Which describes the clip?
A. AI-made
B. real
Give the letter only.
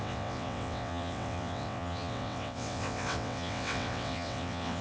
A